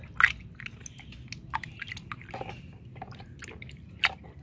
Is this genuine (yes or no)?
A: yes